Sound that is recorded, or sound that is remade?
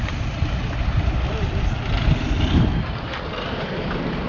recorded